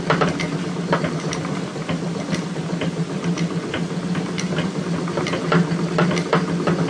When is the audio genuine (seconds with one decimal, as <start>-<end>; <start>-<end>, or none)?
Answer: 0.0-6.9